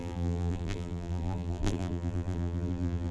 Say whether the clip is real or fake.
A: fake